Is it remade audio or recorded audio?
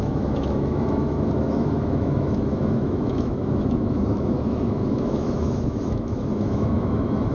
remade